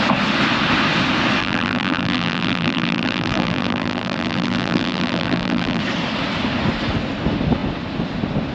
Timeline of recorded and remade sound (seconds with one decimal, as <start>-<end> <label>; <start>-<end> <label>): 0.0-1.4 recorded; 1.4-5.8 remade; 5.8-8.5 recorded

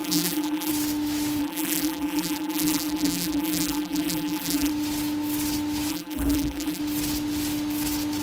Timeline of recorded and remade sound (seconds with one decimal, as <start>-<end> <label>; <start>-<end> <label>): 0.0-0.7 remade; 0.7-1.4 recorded; 1.4-4.7 remade; 4.7-5.9 recorded; 5.9-6.8 remade; 6.8-8.2 recorded

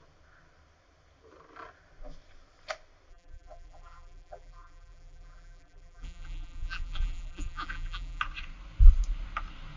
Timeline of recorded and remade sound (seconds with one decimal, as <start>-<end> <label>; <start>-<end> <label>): 0.0-3.1 recorded; 3.1-8.2 remade; 8.2-9.8 recorded

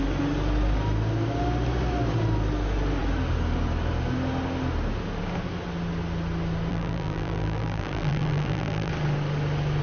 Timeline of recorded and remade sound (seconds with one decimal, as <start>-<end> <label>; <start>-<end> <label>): 0.0-6.7 recorded; 6.7-8.9 remade; 8.9-9.8 recorded